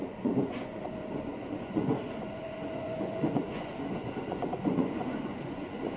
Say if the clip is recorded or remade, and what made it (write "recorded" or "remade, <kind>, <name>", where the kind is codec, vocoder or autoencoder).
remade, vocoder, Vocos